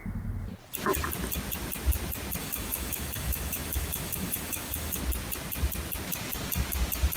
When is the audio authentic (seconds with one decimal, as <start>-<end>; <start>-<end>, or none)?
0.0-2.4; 5.0-7.2